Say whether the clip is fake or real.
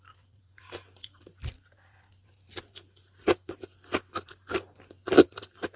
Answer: fake